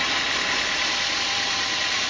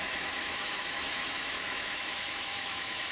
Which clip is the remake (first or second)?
second